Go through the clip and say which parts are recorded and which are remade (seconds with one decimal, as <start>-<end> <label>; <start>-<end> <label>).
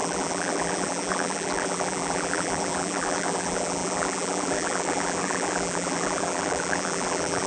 0.0-7.5 remade